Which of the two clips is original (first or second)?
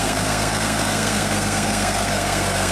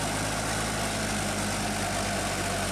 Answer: second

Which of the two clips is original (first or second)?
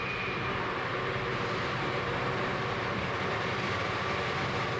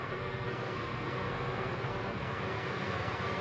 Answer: first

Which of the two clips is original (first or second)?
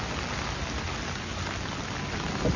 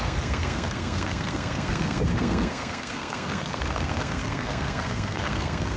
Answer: first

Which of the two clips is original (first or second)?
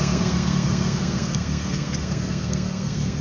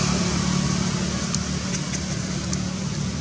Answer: second